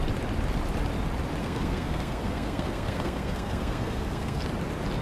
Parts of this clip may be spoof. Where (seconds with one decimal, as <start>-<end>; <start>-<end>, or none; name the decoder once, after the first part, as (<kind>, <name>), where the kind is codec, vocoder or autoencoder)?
1.4-4.4 (codec, SNAC)